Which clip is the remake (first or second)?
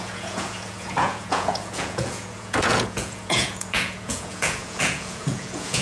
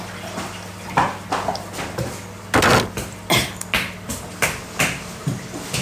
first